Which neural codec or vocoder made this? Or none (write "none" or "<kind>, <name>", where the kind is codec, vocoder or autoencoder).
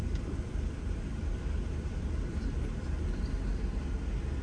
none